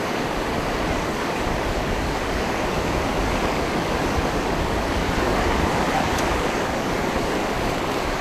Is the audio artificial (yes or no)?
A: yes